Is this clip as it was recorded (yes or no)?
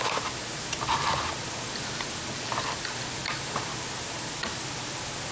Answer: yes